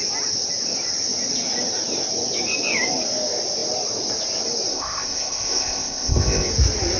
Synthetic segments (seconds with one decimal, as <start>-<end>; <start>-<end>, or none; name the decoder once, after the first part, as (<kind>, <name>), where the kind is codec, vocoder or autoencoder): 4.7-6.5 (codec, ZipCodec)